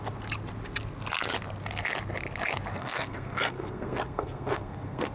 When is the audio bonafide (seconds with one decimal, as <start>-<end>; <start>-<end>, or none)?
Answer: 0.0-2.7